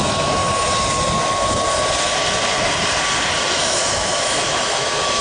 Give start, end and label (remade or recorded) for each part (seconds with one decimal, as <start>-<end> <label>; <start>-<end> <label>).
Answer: 0.0-0.4 remade; 0.4-3.5 recorded; 3.5-5.2 remade